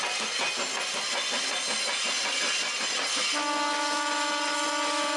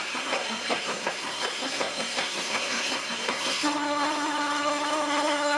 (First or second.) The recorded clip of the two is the first